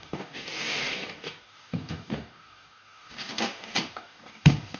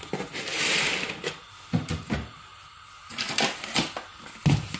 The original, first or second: second